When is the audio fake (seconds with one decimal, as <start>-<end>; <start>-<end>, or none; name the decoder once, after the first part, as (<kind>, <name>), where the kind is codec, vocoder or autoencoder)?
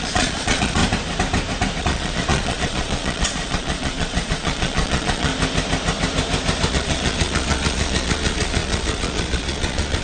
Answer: 0.0-0.8 (vocoder, Vocos); 1.8-5.3; 6.7-10.0